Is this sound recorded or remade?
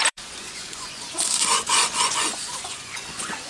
remade